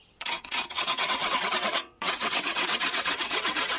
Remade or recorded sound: remade